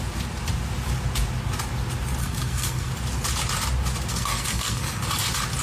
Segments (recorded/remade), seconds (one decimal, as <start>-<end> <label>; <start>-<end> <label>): 0.0-2.2 recorded; 2.2-2.9 remade; 2.9-4.1 recorded; 4.1-5.0 remade; 5.0-5.6 recorded